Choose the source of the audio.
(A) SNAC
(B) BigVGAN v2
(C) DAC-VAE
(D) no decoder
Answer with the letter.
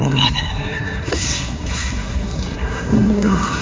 A